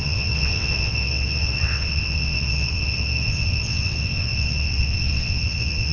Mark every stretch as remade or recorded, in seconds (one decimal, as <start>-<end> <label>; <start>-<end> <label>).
0.0-5.9 remade